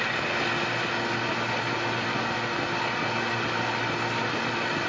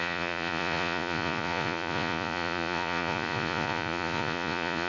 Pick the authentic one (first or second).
first